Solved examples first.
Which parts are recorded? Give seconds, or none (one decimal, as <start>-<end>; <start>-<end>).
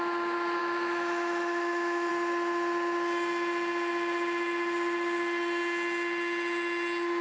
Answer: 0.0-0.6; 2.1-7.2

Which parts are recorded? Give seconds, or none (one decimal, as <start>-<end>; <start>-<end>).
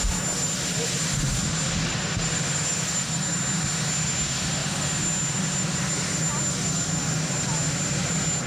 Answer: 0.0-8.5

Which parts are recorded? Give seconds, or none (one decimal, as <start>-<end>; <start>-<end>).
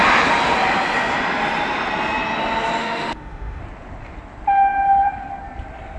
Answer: 0.0-2.8; 3.6-6.0